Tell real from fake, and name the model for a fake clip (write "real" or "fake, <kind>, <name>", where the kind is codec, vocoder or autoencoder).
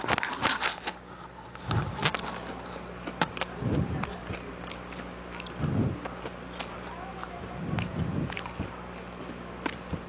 real